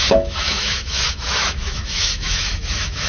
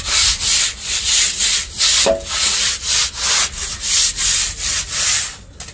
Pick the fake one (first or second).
first